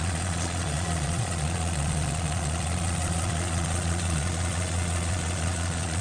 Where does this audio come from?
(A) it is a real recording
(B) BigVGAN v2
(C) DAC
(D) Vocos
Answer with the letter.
D